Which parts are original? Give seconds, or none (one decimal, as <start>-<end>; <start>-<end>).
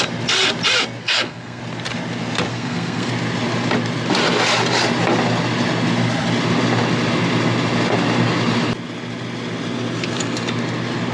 0.0-1.0; 1.6-2.5; 3.1-11.1